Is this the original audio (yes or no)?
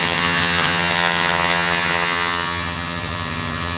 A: no